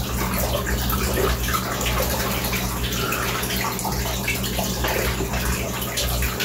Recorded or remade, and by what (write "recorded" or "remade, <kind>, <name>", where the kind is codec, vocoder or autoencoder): recorded